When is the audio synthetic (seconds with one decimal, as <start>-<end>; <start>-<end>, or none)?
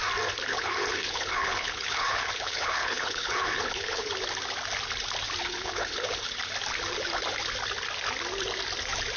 0.5-4.1; 5.4-6.2